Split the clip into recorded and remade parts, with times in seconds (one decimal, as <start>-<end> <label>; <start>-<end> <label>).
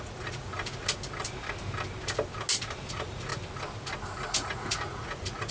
0.0-0.5 remade; 0.5-2.9 recorded; 2.9-3.3 remade; 3.3-4.3 recorded; 4.3-5.5 remade